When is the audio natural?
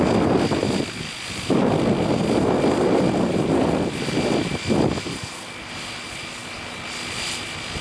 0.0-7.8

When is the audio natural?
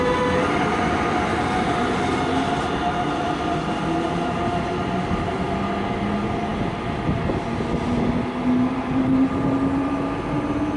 0.0-10.8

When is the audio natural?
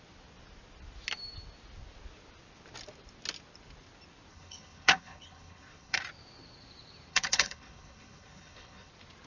0.0-4.3; 6.0-7.1; 8.9-9.3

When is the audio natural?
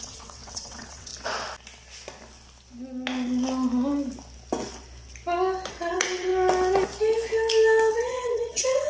1.1-5.7; 6.3-7.9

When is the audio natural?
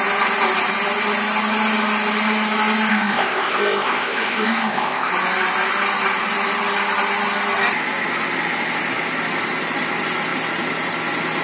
0.0-2.9; 5.1-11.4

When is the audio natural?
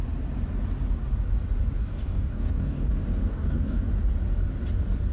0.0-1.8; 2.9-3.3; 3.9-5.1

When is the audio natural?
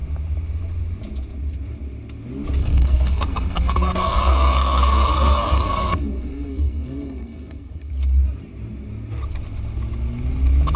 0.0-2.6; 7.9-10.8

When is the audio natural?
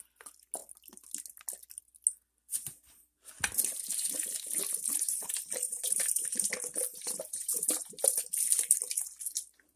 0.0-3.7; 6.5-6.9; 8.2-9.8